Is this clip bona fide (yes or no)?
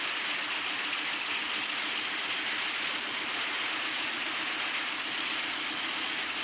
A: yes